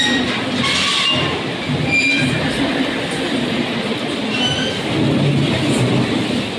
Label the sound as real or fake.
real